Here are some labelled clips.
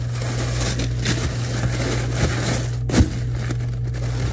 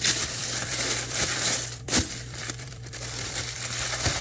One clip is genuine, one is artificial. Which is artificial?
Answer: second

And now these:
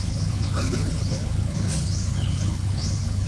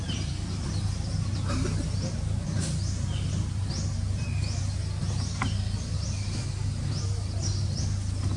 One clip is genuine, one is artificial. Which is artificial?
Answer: first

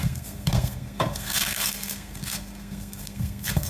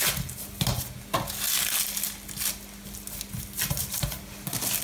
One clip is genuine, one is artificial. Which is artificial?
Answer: first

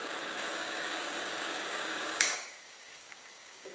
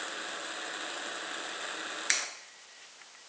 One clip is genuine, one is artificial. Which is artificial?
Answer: first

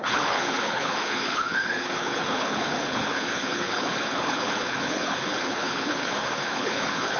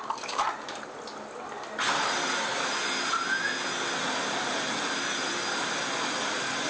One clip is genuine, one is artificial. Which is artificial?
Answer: first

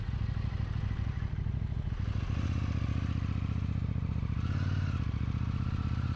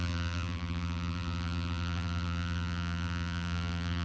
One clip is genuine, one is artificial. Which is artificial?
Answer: second